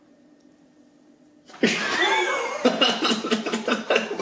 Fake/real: fake